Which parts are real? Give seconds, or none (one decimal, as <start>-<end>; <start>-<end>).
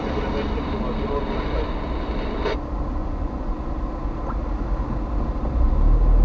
0.0-3.0; 3.6-6.2